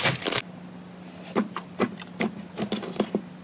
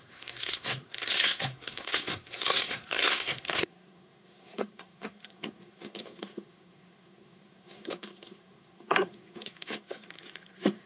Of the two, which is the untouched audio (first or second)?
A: first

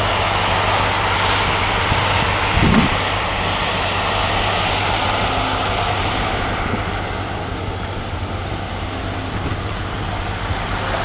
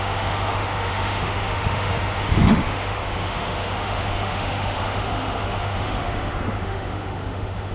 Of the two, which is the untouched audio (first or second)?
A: first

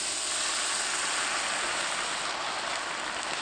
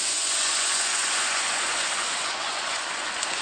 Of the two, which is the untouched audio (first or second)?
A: first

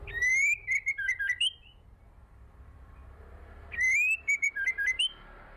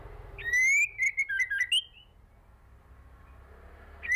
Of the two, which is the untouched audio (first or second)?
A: second